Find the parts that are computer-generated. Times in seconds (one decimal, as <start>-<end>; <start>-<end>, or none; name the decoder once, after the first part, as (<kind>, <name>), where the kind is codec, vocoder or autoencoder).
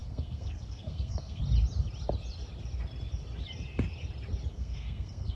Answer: 0.0-1.4 (codec, SNAC); 4.5-5.3